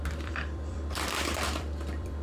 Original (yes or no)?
no